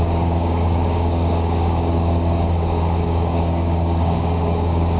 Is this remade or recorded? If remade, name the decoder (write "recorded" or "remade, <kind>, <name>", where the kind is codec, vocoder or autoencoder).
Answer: remade, codec, DAC